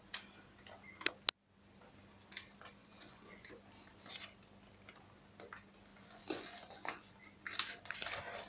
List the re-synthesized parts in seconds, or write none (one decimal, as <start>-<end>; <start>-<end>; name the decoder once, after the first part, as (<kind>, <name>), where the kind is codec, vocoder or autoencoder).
2.8-3.5 (vocoder, Vocos); 5.9-7.1